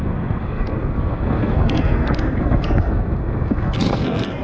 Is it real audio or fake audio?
fake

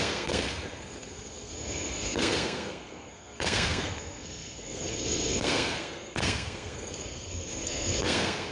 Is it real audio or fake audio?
fake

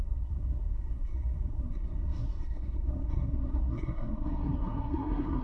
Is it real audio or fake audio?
fake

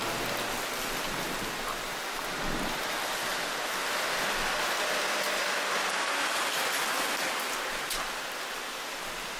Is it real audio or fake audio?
real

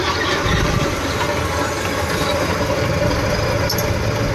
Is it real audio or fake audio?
real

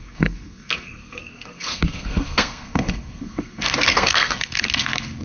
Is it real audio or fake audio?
fake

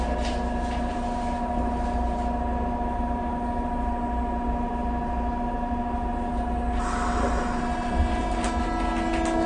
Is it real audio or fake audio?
real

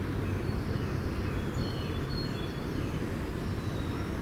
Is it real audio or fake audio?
real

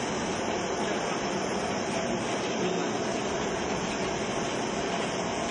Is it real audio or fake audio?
real